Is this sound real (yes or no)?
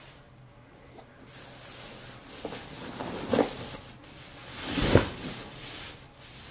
yes